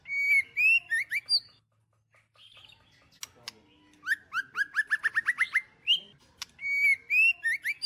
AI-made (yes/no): no